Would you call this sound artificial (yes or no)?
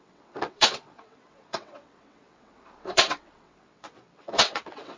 yes